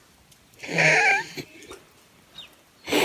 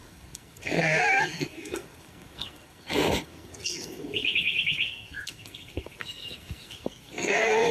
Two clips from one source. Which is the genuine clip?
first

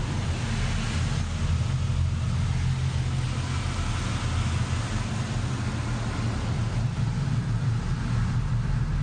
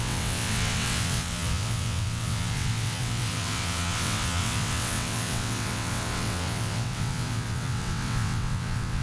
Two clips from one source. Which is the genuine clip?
first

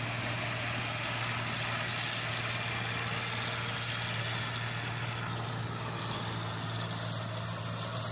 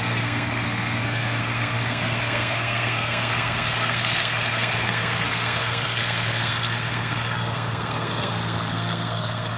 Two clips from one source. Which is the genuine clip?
first